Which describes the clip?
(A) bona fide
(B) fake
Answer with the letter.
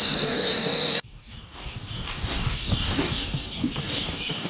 B